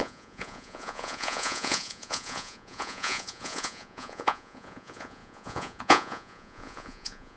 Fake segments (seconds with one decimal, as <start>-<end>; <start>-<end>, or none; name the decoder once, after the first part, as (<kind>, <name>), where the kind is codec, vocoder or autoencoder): 0.0-7.4 (vocoder, Vocos)